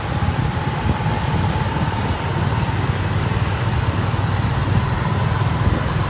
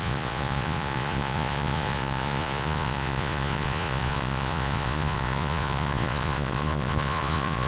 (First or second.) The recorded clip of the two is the first